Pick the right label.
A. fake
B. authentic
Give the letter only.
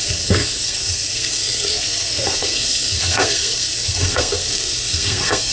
A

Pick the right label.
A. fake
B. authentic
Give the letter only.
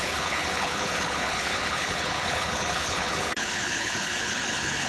A